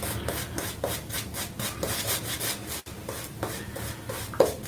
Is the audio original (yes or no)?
yes